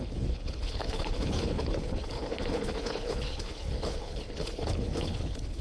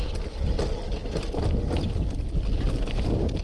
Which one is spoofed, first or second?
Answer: first